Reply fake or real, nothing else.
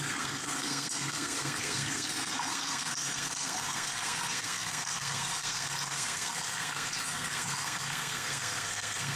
fake